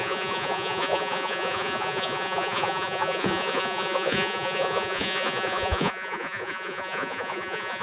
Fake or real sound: fake